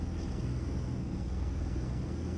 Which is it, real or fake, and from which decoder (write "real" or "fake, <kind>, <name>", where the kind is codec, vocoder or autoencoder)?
fake, codec, SNAC